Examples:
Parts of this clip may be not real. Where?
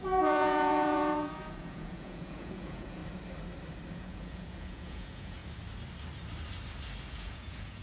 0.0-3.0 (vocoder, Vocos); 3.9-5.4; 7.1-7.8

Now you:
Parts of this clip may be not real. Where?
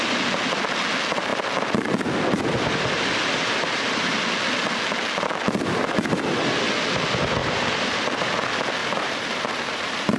7.4-8.3 (vocoder, BigVGAN v2); 8.8-10.2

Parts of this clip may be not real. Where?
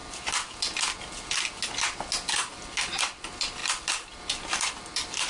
none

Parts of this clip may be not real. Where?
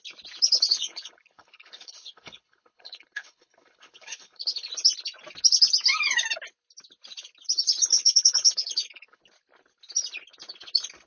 0.5-4.7 (codec, HILCodec); 7.9-9.2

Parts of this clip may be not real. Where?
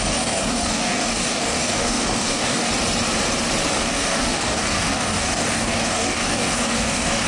0.0-2.7 (codec, DAC); 3.7-7.3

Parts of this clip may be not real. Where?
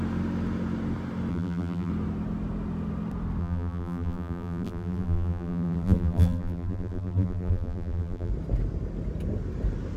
1.3-1.9 (vocoder, BigVGAN v2); 3.4-8.3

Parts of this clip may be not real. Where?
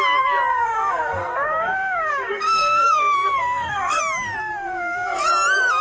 0.5-4.0 (codec, SNAC); 4.4-5.3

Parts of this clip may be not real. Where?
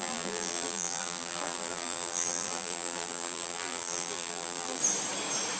0.0-4.8 (vocoder, BigVGAN v2)